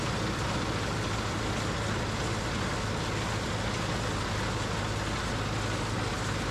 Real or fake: real